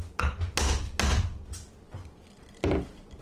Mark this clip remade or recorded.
recorded